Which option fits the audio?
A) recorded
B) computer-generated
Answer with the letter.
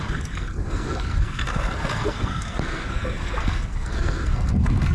B